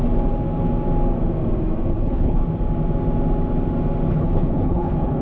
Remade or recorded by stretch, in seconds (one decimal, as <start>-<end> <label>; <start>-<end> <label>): 0.0-1.9 recorded; 1.9-2.4 remade; 2.4-4.1 recorded; 4.1-5.2 remade